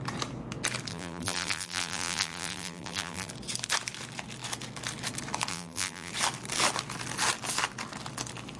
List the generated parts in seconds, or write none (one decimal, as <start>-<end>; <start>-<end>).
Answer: 0.9-3.3; 5.5-6.1

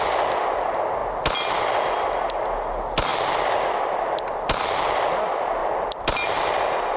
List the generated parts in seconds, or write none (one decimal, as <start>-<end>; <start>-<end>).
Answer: 5.6-7.0